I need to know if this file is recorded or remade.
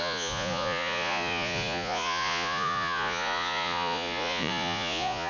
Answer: remade